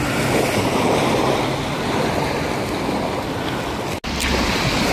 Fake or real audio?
real